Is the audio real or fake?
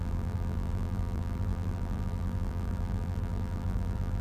fake